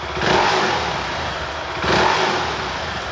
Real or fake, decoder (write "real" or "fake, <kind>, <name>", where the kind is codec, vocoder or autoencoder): real